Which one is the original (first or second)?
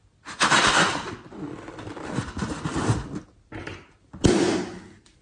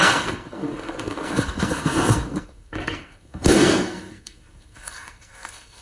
first